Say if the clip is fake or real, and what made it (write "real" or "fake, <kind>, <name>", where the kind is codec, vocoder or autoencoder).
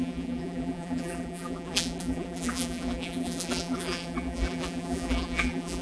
fake, vocoder, BigVGAN v2